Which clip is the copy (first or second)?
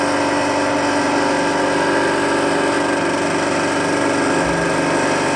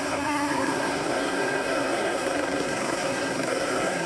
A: second